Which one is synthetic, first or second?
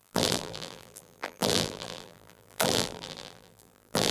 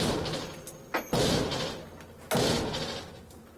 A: first